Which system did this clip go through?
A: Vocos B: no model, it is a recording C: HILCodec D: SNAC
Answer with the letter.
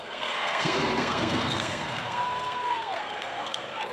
D